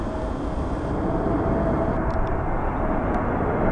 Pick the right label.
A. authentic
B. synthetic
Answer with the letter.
A